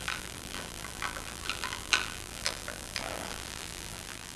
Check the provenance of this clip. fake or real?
fake